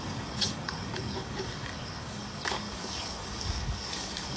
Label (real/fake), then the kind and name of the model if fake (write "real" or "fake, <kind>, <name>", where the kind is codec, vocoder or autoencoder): fake, codec, DAC